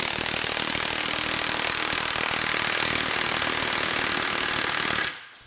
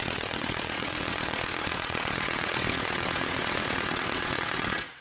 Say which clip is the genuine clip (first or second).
first